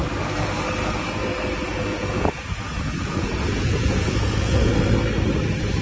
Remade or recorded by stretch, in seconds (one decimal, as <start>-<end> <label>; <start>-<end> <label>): 0.0-1.7 recorded; 1.7-4.7 remade; 4.7-5.8 recorded